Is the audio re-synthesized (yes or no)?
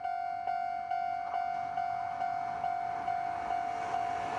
no